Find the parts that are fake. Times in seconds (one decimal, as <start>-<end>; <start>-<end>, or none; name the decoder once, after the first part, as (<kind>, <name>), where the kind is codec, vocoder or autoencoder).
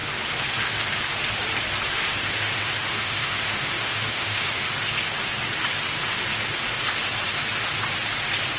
2.0-4.7 (autoencoder, DAC-VAE)